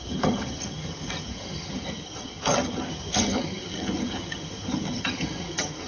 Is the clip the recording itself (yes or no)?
no